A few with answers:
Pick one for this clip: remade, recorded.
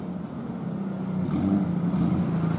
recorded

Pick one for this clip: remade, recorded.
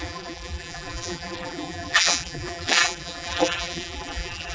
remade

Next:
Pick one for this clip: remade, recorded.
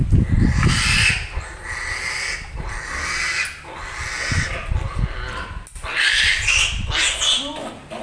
recorded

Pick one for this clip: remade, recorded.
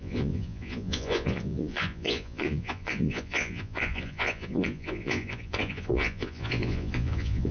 remade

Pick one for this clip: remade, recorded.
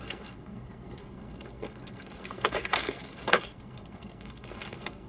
remade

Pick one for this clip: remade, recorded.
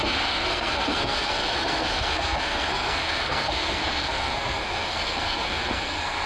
remade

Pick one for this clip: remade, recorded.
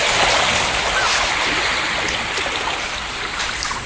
recorded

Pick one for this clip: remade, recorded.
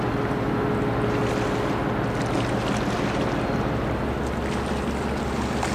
recorded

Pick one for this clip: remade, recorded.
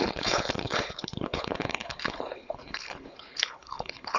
remade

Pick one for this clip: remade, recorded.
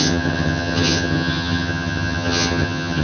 remade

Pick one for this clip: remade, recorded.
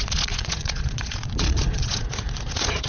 remade